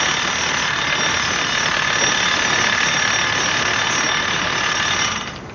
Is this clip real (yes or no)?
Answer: yes